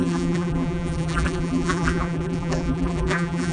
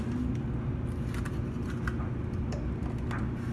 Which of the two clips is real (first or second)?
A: second